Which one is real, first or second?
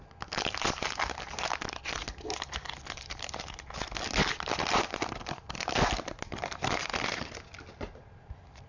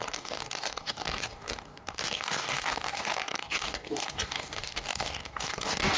first